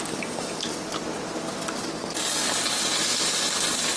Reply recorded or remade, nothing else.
recorded